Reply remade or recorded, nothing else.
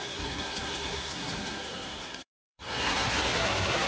remade